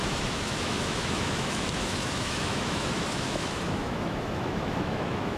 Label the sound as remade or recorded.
remade